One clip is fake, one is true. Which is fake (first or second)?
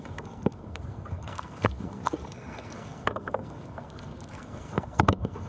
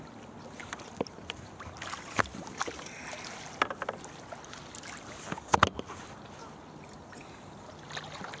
first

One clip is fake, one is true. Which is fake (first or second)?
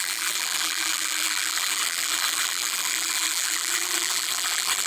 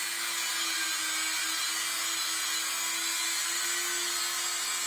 first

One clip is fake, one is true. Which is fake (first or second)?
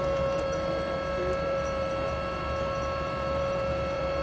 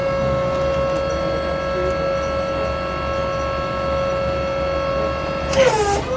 first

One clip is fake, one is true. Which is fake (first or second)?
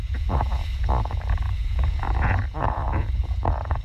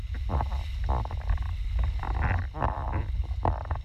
first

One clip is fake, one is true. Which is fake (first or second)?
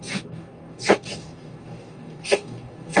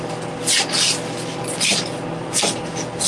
first